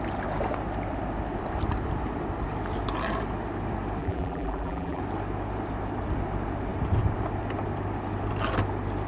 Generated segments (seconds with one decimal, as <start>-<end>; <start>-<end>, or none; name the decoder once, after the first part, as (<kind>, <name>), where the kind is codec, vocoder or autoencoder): 4.0-5.0 (vocoder, BigVGAN v2)